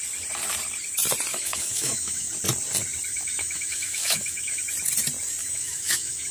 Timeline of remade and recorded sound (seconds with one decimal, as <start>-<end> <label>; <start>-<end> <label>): 0.0-1.3 recorded; 1.3-2.3 remade; 2.3-3.1 recorded; 3.1-4.6 remade; 4.6-5.4 recorded; 5.4-6.3 remade